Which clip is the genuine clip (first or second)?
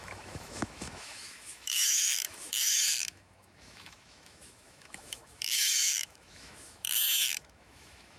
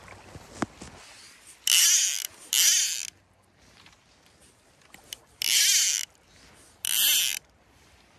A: second